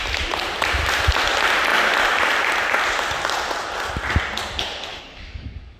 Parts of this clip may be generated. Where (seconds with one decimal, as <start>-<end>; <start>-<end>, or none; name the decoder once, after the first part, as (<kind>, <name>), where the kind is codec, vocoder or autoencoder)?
4.9-5.8 (codec, DAC)